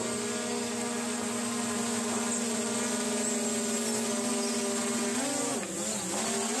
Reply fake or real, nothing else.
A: real